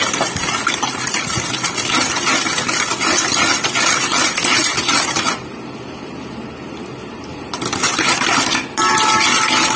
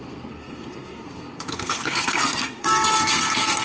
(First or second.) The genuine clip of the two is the first